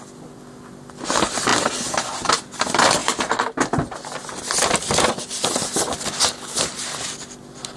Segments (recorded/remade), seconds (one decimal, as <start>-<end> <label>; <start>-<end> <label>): 0.0-7.8 recorded